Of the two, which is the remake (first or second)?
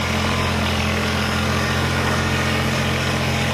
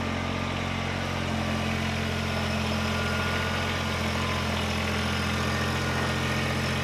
first